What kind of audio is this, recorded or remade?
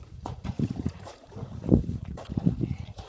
remade